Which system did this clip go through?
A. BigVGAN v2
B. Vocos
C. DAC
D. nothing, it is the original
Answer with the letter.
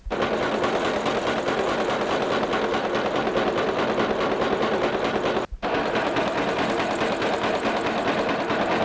D